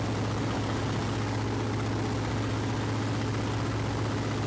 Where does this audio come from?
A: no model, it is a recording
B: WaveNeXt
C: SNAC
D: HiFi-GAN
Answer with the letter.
A